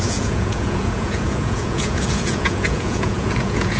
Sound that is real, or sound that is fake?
fake